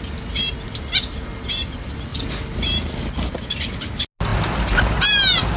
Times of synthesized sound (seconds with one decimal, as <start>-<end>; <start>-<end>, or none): none

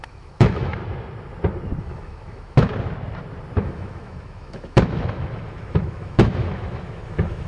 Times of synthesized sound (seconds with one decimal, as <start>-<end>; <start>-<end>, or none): 0.0-0.8; 1.8-2.7; 3.6-7.5

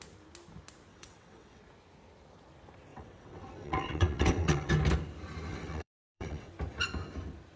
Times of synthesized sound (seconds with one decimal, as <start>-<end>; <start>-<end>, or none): 0.9-1.6; 2.9-4.7; 5.5-6.5

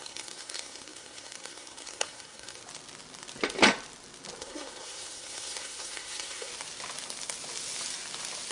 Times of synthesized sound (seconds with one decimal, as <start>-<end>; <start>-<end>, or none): 0.0-2.6; 4.4-6.5

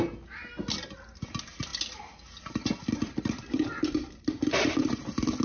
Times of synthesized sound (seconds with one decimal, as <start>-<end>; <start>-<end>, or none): none